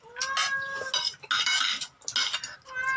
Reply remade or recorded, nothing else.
recorded